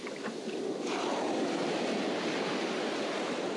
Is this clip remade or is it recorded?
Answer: recorded